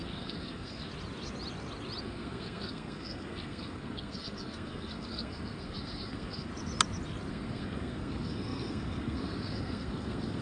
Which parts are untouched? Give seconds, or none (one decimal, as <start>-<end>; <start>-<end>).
0.9-2.0; 6.5-7.3